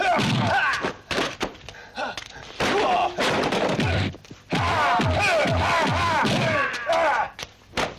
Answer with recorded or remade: recorded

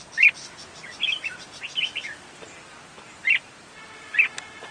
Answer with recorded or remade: recorded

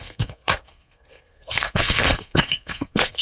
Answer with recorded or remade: remade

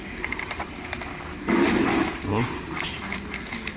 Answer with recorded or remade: recorded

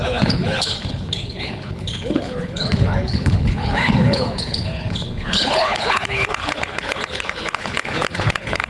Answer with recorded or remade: remade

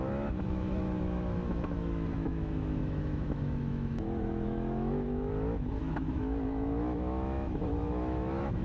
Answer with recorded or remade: remade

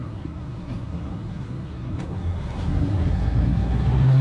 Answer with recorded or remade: remade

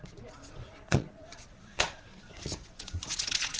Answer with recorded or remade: remade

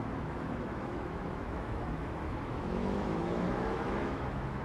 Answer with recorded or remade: remade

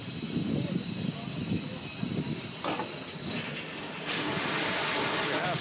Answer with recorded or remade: recorded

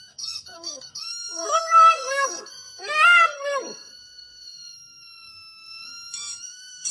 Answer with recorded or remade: remade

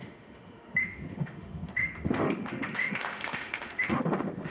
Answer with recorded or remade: remade